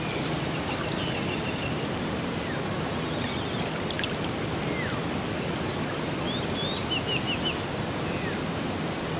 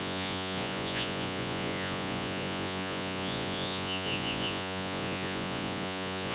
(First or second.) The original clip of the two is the first